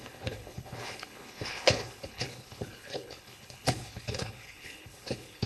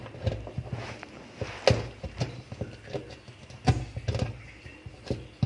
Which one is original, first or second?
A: second